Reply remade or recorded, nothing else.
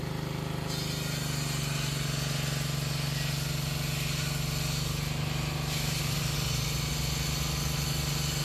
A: recorded